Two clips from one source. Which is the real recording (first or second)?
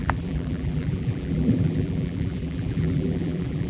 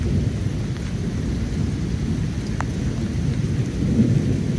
second